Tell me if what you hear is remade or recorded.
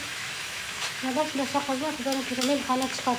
remade